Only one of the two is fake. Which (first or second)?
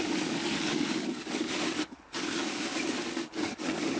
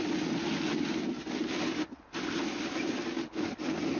first